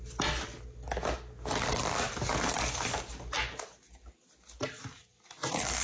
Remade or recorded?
recorded